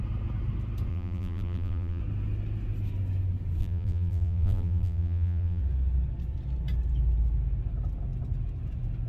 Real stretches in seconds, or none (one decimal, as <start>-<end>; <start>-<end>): 0.0-0.9; 2.0-3.6; 5.6-9.1